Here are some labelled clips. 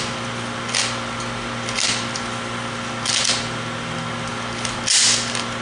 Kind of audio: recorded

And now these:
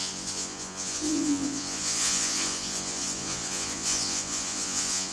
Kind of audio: remade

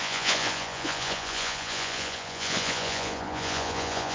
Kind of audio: remade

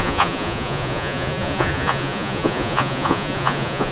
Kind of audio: remade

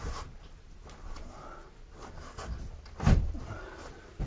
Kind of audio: recorded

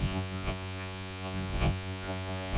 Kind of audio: remade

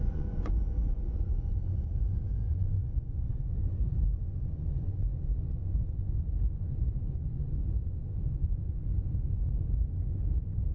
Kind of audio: remade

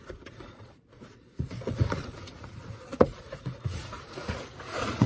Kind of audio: remade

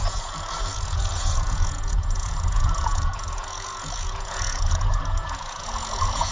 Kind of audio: remade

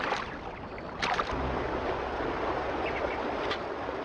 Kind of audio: recorded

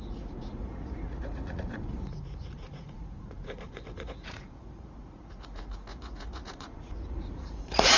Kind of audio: remade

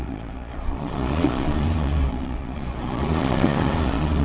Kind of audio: remade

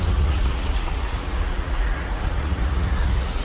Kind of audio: remade